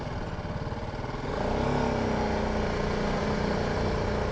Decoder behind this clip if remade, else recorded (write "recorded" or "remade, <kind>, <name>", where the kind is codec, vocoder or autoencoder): recorded